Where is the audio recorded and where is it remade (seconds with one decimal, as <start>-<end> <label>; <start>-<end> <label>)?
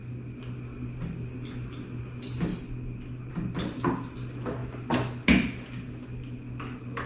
0.0-7.1 recorded